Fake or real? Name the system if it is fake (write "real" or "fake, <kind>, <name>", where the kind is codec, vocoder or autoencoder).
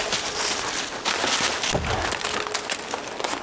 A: real